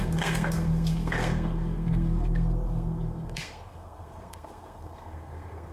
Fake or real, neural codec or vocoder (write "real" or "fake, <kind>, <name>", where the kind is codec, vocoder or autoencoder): fake, codec, SNAC